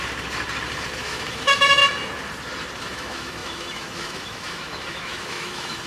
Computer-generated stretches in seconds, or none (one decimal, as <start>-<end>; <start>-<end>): 1.0-1.8; 2.8-5.9

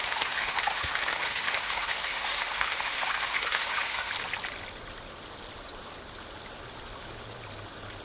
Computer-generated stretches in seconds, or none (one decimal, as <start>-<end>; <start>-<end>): 0.0-4.1

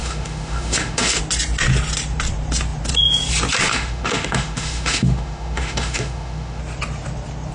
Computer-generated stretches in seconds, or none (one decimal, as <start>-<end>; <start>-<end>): 0.0-1.2; 3.7-6.6